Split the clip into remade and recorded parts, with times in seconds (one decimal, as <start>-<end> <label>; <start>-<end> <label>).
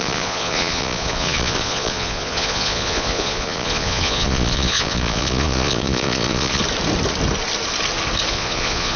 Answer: 0.0-6.6 remade; 6.6-8.3 recorded; 8.3-9.0 remade